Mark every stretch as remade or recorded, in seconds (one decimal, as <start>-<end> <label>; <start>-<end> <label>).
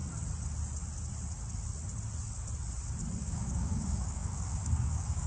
0.0-3.2 recorded; 3.2-5.3 remade